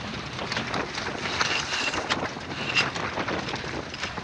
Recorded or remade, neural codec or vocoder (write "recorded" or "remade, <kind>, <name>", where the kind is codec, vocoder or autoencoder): recorded